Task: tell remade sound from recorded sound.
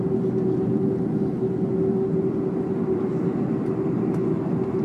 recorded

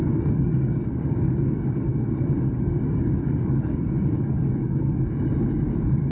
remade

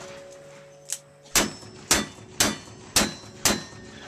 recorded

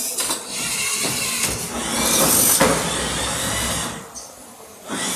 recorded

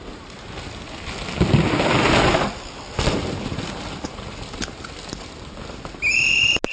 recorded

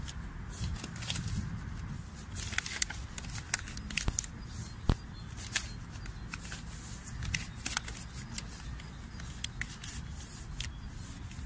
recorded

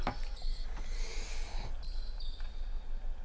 recorded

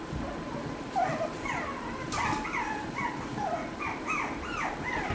remade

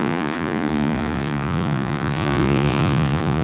remade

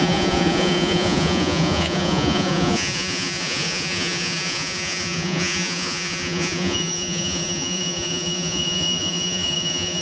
remade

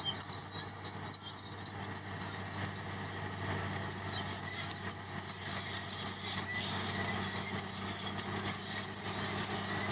recorded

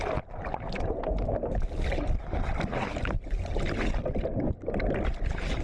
recorded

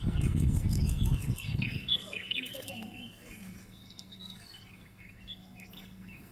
remade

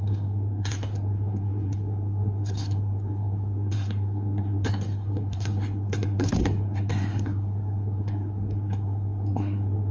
remade